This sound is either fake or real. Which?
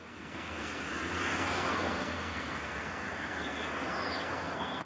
fake